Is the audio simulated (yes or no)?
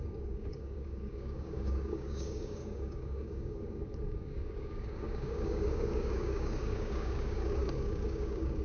yes